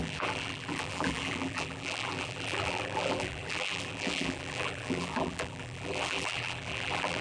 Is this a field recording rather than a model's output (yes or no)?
no